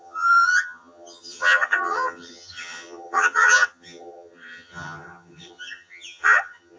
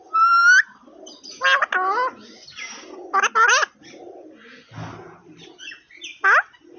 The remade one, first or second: first